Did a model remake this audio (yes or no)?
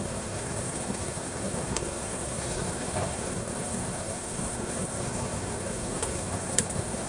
yes